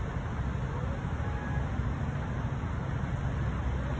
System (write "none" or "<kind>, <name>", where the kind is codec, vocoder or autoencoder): none